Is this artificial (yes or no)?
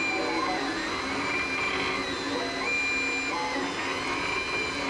no